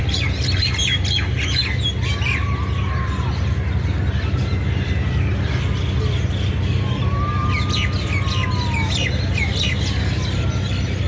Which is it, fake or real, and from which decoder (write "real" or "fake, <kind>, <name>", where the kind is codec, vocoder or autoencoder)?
real